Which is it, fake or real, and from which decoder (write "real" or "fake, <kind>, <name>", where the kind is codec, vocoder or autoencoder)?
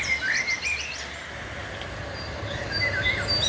real